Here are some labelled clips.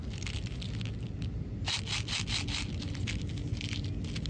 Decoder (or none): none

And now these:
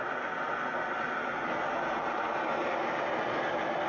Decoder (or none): none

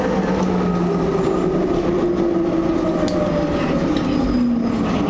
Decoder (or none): none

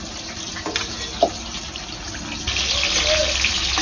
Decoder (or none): none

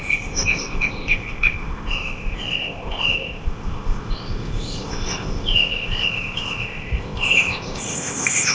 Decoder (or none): codec, ZipCodec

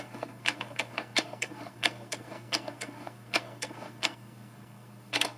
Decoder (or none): codec, SNAC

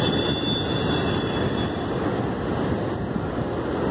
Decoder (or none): none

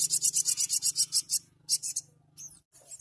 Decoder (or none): none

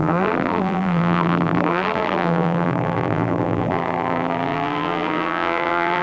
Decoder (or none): vocoder, BigVGAN v2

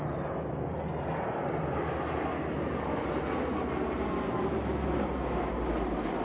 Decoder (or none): none